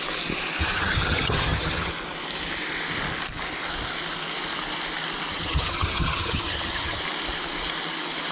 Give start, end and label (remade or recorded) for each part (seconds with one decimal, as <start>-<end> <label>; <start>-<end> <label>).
0.0-0.6 recorded; 0.6-1.9 remade; 1.9-5.3 recorded; 5.3-7.0 remade; 7.0-8.3 recorded